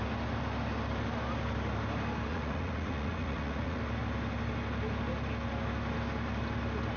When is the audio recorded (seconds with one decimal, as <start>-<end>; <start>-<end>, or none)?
0.0-2.3; 3.8-7.0